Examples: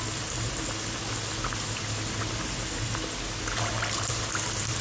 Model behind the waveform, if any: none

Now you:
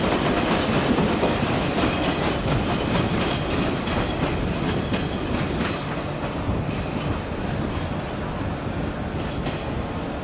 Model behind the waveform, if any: none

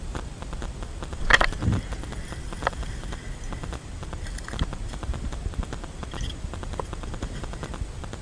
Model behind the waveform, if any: none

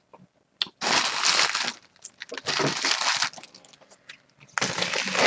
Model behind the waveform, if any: none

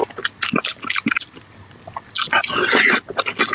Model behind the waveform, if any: none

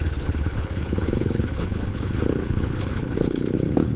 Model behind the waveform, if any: codec, HILCodec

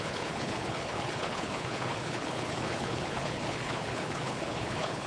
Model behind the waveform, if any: codec, HILCodec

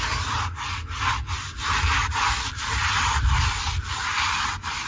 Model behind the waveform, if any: none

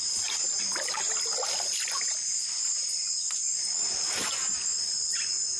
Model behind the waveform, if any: none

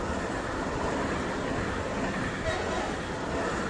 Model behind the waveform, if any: none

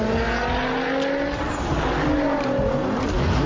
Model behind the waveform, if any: none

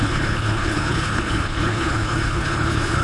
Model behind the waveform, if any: codec, HILCodec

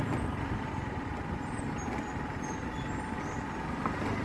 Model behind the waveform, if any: none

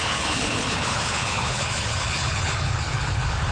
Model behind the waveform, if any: codec, HILCodec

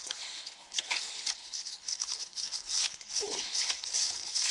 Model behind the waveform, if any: codec, HILCodec